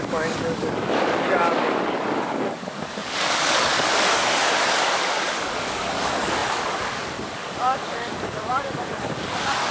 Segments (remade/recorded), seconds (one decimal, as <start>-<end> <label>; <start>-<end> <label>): 0.0-9.7 remade